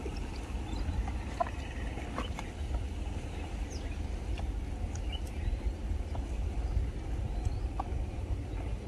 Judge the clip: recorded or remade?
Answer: recorded